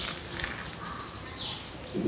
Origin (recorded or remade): recorded